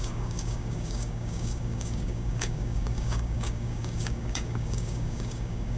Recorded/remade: remade